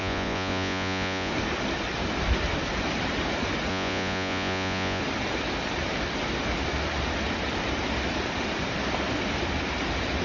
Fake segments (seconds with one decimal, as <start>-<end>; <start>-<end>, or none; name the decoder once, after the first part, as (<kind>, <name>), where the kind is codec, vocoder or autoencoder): 0.0-1.3 (vocoder, Vocos); 3.7-5.0